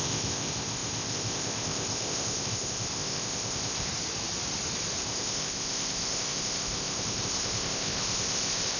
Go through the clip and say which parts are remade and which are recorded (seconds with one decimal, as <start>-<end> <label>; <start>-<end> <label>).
0.0-3.9 remade; 3.9-5.0 recorded; 5.0-8.8 remade